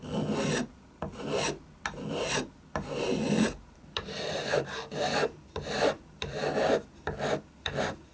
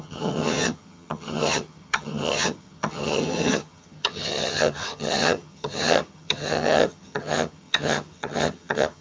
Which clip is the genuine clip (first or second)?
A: first